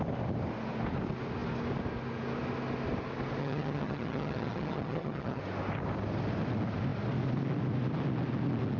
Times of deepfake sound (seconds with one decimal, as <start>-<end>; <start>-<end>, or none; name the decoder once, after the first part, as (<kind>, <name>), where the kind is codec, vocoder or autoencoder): 3.4-5.4 (vocoder, HiFi-GAN)